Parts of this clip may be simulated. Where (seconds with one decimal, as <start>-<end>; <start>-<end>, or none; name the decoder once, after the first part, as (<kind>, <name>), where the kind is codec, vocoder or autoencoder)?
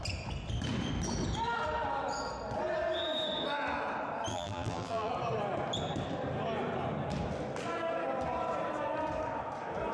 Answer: 4.3-5.1 (vocoder, BigVGAN v2)